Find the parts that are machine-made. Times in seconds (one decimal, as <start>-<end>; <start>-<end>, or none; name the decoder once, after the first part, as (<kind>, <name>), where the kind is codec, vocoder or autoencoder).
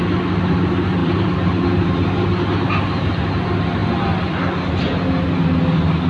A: 1.0-2.2 (vocoder, BigVGAN v2)